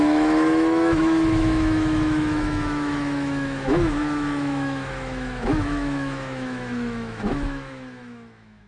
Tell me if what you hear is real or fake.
fake